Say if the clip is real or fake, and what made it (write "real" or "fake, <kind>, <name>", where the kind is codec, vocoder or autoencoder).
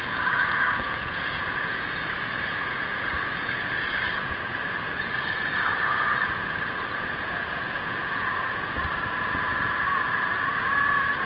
fake, vocoder, Vocos